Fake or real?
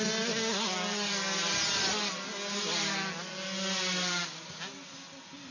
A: real